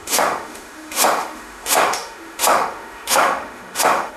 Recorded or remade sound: remade